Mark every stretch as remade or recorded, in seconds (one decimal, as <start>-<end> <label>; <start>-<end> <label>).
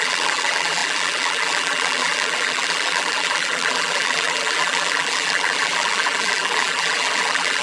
0.0-7.6 remade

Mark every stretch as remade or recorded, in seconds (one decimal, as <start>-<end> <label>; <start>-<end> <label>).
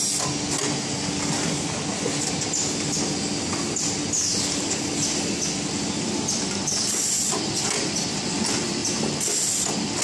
0.0-10.0 recorded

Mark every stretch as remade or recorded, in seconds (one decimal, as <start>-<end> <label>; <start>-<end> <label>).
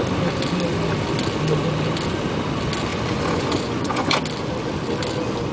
0.0-2.9 recorded; 2.9-4.2 remade; 4.2-5.5 recorded